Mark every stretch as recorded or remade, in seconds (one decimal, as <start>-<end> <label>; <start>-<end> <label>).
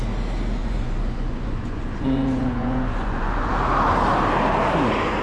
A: 0.0-0.6 recorded; 0.6-3.5 remade; 3.5-5.2 recorded